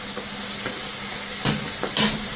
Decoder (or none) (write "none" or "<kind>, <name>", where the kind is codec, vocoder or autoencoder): none